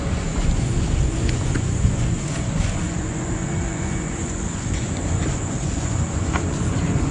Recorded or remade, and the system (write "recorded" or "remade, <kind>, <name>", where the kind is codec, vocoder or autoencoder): remade, vocoder, Vocos